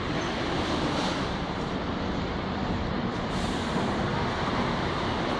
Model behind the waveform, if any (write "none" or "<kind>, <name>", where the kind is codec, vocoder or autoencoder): vocoder, BigVGAN v2